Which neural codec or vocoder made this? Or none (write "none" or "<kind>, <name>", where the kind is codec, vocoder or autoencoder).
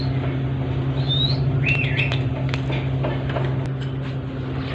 none